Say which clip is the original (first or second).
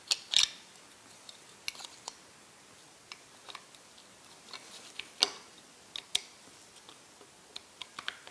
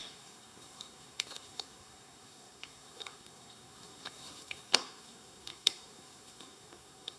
first